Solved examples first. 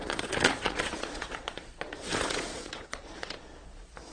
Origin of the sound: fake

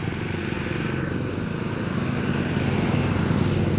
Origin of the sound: real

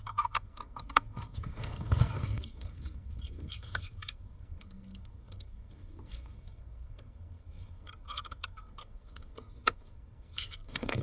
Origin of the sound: fake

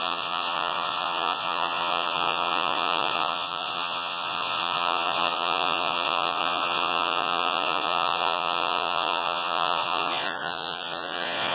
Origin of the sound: fake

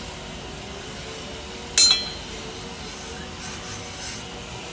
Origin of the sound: real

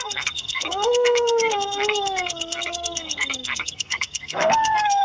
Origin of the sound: fake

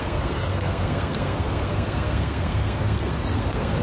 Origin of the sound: fake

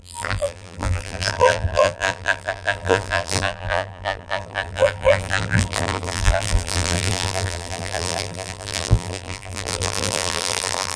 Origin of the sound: fake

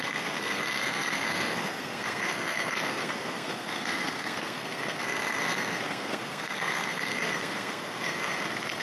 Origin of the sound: fake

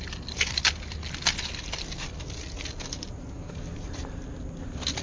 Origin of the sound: real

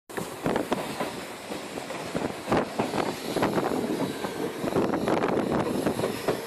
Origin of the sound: real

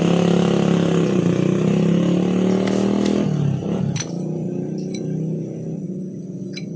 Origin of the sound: real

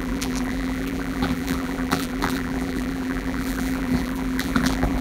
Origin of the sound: fake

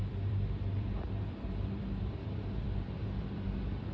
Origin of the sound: fake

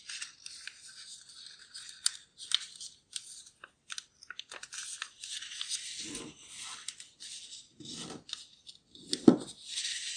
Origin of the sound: real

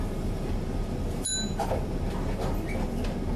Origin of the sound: real